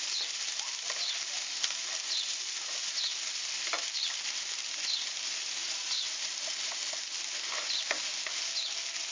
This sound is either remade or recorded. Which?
recorded